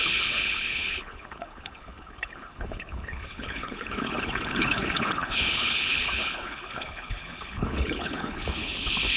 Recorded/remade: remade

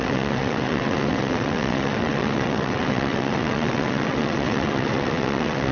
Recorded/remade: remade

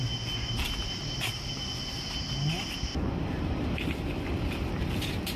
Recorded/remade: recorded